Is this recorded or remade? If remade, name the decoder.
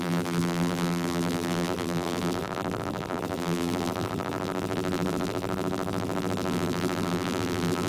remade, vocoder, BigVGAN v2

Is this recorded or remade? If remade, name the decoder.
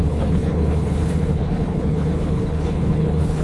remade, codec, HILCodec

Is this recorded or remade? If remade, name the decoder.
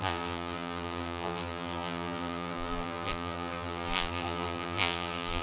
remade, vocoder, BigVGAN v2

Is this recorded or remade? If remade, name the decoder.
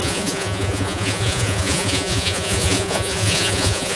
remade, vocoder, Vocos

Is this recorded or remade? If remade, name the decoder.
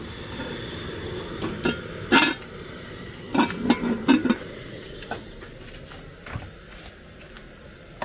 recorded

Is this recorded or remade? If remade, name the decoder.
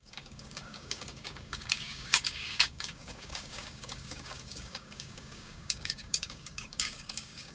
remade, codec, DAC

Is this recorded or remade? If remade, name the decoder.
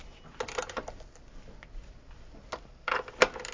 recorded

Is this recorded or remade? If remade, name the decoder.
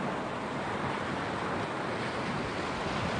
recorded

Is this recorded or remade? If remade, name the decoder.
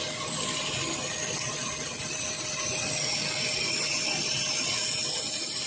recorded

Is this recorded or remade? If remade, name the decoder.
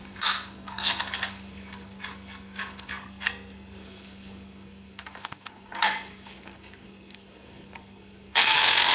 remade, codec, SNAC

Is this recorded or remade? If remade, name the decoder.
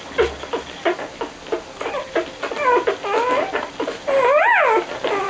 recorded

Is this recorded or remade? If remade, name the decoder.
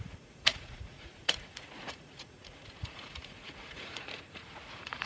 remade, vocoder, Vocos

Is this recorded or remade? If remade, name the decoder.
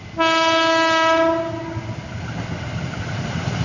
recorded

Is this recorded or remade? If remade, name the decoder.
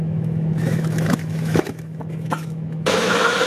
remade, autoencoder, DAC-VAE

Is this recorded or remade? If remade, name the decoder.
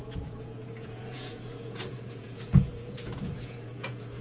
remade, vocoder, Vocos